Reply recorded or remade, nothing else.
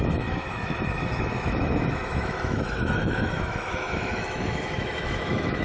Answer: remade